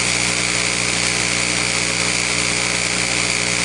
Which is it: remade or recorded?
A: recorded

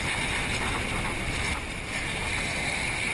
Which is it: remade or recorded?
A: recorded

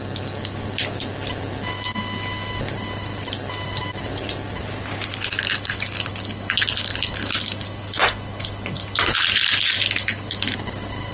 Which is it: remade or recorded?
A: recorded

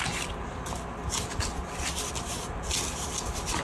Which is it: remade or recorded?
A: recorded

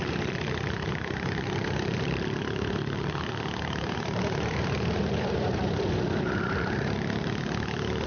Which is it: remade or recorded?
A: remade